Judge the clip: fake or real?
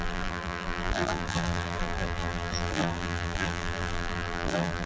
fake